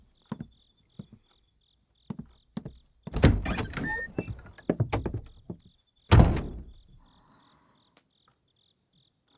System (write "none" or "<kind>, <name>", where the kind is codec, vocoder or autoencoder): none